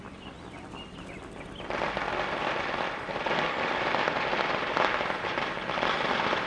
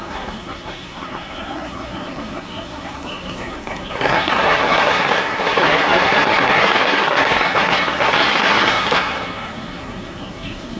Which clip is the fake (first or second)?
second